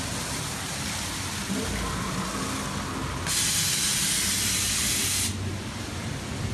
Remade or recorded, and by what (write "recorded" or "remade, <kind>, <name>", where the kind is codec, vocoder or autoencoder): recorded